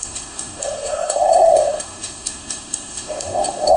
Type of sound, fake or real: fake